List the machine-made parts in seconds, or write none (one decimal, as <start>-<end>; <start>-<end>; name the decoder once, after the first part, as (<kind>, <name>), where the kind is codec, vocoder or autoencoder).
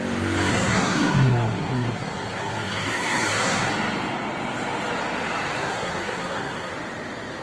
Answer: 0.5-3.7 (codec, SNAC); 5.6-6.7